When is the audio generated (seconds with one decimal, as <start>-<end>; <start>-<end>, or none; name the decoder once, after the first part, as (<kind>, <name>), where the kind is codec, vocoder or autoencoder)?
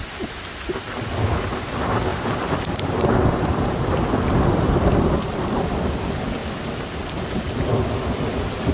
0.0-6.4 (vocoder, BigVGAN v2); 7.4-8.7